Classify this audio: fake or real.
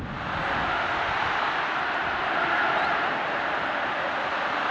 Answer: real